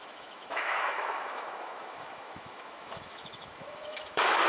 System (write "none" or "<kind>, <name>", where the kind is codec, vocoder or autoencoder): autoencoder, DAC-VAE